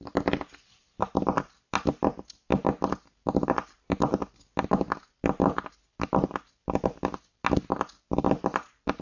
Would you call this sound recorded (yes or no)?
yes